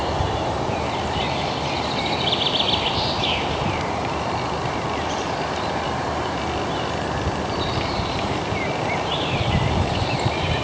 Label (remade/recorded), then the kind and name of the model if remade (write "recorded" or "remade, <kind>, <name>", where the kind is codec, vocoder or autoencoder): remade, vocoder, BigVGAN v2